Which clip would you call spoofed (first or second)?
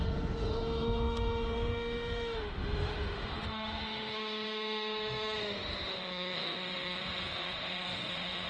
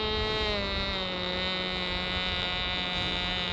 first